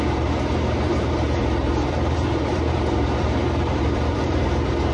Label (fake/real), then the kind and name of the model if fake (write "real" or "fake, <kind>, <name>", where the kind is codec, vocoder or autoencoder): fake, vocoder, BigVGAN v2